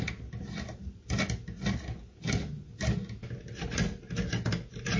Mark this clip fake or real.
real